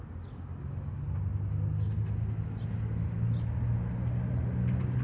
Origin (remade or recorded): recorded